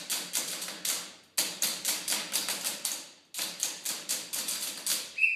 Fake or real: real